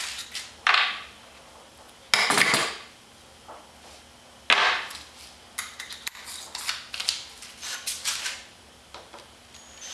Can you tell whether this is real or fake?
real